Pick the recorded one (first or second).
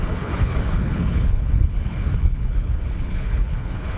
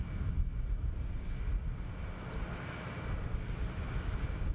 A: second